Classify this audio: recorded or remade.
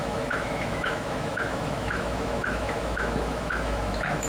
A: remade